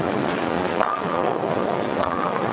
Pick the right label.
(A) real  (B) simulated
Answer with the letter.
B